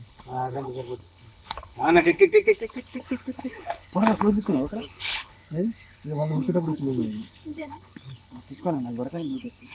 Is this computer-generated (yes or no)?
yes